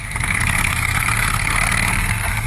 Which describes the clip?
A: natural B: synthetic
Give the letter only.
B